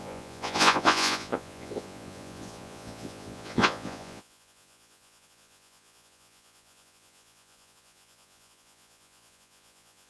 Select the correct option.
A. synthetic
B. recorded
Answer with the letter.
A